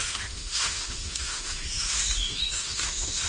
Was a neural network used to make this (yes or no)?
yes